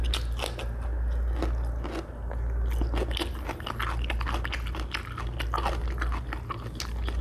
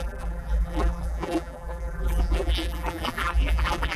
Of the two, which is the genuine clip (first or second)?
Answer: first